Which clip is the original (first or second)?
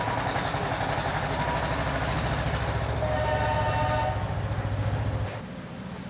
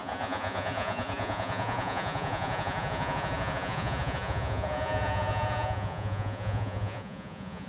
first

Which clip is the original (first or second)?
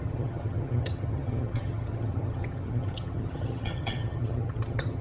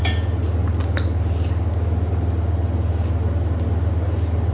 second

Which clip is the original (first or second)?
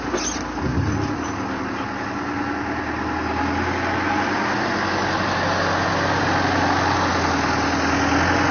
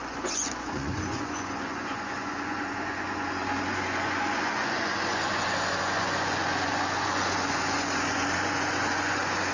first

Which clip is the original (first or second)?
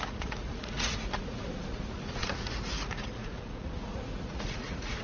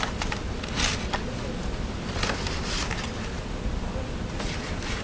second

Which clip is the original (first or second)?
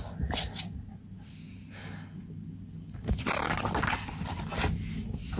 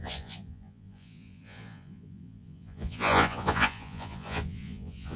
first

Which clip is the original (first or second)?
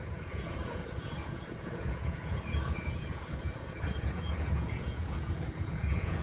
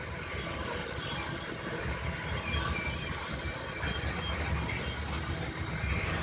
second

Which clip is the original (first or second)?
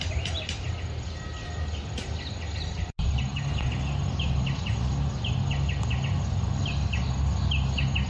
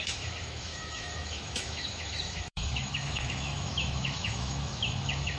first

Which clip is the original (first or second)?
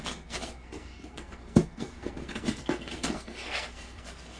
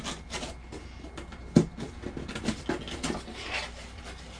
second